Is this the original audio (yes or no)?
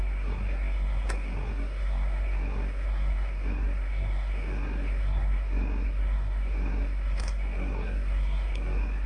no